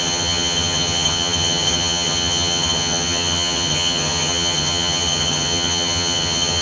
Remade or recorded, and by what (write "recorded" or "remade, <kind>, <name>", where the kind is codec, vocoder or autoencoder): remade, vocoder, HiFi-GAN